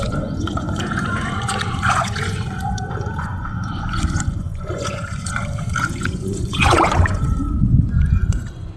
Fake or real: fake